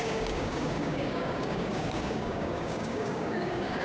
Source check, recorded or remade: remade